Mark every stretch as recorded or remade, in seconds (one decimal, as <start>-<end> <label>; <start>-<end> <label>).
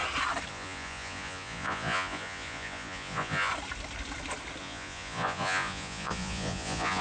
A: 0.0-0.5 recorded; 0.5-3.5 remade; 3.5-4.6 recorded; 4.6-7.0 remade